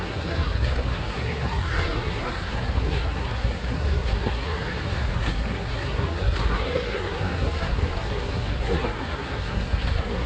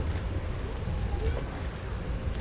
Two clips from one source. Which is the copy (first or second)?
first